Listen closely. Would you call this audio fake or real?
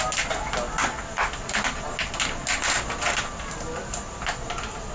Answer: real